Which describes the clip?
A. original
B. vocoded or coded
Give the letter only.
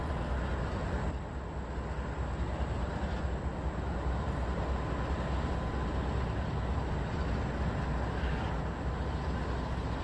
A